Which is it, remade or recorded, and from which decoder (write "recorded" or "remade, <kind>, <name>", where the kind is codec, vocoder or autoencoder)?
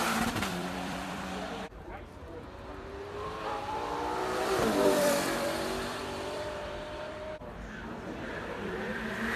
remade, vocoder, BigVGAN v2